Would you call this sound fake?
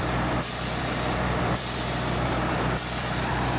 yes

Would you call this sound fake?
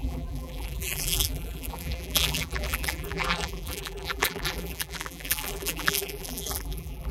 yes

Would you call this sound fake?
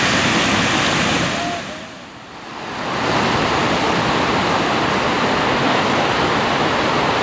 no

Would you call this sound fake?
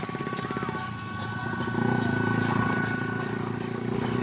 no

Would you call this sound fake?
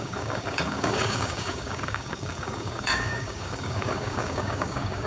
yes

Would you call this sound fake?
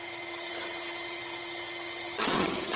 yes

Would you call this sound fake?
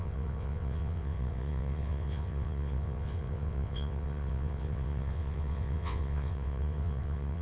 yes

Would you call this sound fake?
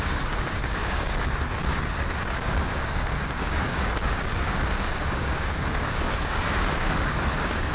yes